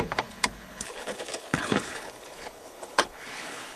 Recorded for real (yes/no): no